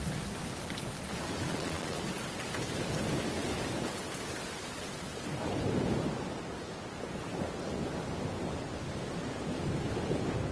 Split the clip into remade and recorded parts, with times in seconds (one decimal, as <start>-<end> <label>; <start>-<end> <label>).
0.0-1.5 recorded; 1.5-2.0 remade; 2.0-10.5 recorded